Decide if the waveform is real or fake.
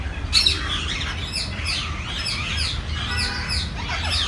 real